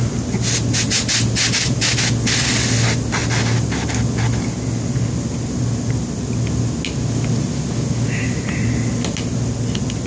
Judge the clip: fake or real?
real